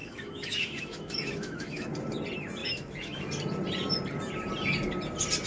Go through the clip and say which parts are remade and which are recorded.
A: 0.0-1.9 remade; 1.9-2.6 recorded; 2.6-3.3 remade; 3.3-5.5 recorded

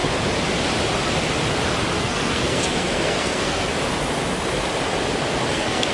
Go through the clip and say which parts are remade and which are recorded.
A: 0.0-2.0 recorded; 2.0-3.7 remade; 3.7-5.5 recorded; 5.5-5.9 remade